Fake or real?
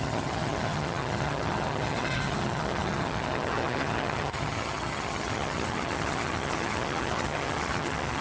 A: fake